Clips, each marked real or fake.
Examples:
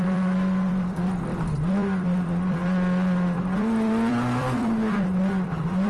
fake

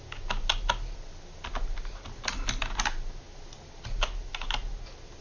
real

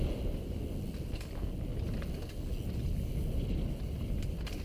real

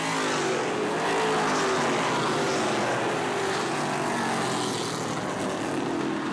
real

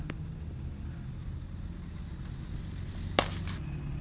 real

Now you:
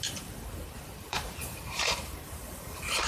fake